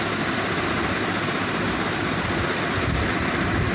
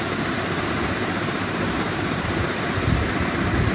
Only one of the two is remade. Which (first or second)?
second